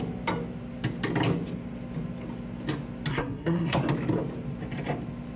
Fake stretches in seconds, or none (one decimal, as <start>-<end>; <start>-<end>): 3.1-3.8